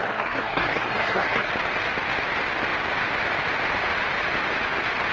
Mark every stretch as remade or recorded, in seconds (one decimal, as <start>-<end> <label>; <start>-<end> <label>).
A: 0.0-1.5 remade; 1.5-5.1 recorded